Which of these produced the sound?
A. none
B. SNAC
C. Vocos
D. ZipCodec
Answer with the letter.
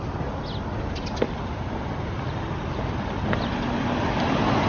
A